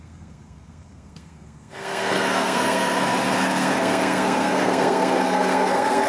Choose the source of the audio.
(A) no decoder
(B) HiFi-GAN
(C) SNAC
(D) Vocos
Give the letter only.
C